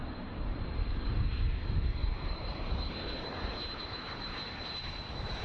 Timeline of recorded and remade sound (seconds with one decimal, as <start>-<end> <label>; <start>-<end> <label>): 0.0-0.6 remade; 0.6-2.0 recorded; 2.0-5.4 remade